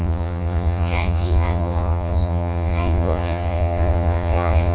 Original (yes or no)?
no